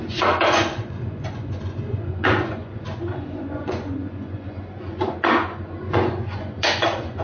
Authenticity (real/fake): fake